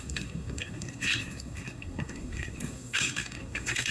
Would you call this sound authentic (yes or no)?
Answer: no